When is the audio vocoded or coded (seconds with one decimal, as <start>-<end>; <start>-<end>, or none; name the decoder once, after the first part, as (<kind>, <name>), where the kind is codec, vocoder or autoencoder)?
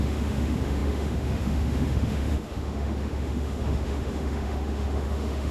0.0-5.5 (autoencoder, DAC-VAE)